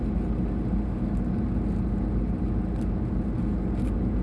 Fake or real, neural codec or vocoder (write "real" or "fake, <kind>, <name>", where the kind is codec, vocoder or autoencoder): real